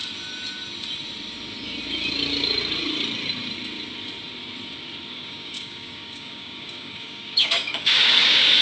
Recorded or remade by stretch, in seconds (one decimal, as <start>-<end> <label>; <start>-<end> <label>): 0.0-5.1 recorded; 5.1-8.6 remade